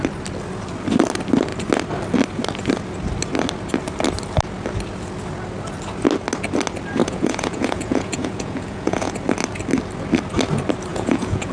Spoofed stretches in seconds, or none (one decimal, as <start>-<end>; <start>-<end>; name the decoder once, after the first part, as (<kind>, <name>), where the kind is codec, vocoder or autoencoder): 7.0-9.1 (vocoder, Vocos); 10.9-11.5